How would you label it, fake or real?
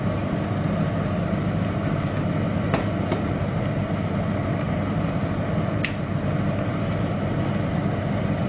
real